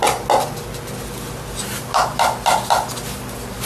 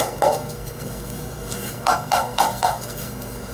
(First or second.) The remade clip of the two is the second